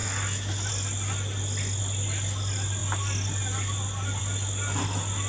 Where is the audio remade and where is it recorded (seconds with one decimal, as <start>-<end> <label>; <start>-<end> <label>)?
0.0-5.3 recorded